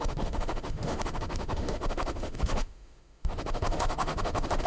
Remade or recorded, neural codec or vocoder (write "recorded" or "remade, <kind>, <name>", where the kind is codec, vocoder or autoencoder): remade, autoencoder, DAC-VAE